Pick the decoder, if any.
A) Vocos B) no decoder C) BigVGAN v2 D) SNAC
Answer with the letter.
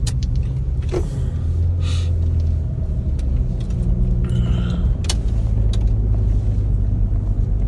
B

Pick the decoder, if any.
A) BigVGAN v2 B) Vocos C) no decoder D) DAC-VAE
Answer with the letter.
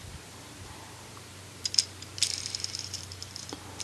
A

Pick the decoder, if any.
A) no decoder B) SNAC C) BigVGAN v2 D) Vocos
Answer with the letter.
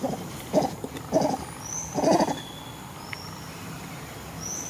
A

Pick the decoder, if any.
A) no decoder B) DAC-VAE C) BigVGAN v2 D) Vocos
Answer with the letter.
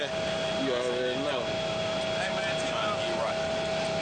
A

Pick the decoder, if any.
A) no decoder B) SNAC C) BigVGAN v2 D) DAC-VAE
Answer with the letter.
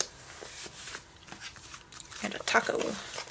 A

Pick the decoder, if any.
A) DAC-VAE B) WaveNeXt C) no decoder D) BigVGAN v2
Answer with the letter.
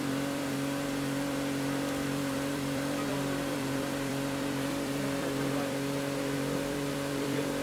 D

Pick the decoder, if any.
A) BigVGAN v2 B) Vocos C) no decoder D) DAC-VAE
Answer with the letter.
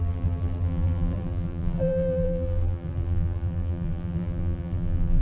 A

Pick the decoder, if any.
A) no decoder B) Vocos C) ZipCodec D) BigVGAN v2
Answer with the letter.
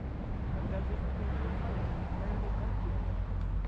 A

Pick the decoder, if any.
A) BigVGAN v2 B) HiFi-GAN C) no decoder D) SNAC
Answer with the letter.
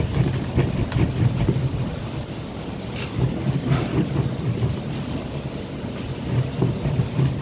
C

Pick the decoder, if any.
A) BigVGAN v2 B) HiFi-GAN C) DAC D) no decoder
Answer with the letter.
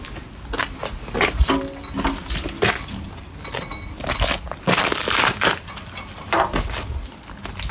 D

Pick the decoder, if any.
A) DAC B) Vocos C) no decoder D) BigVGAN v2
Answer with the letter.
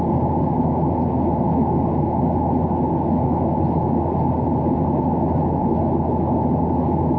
C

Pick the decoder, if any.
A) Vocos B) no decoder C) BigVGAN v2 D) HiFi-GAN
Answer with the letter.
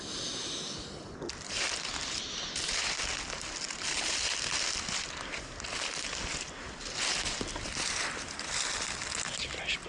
B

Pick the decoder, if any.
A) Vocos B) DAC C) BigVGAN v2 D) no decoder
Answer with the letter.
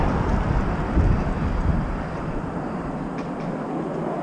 C